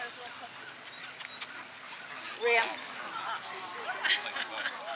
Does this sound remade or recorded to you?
recorded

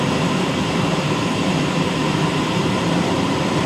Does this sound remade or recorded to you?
remade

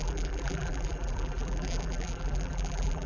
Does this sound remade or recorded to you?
remade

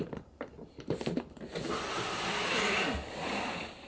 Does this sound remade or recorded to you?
recorded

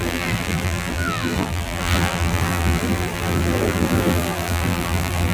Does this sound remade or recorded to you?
remade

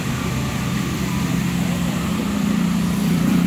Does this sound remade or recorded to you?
remade